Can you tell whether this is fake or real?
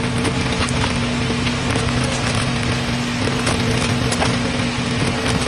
real